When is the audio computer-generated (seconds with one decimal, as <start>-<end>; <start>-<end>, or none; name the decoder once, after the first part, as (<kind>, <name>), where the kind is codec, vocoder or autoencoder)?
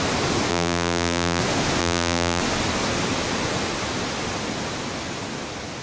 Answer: 0.5-1.4 (vocoder, BigVGAN v2); 1.8-2.4